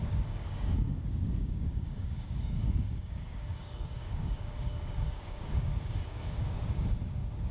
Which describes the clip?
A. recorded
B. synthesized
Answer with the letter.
B